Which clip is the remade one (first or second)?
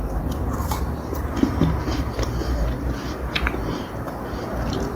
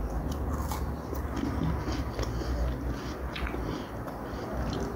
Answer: first